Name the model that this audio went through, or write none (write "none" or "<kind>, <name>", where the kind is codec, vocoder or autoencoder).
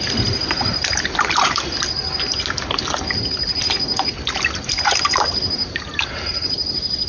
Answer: none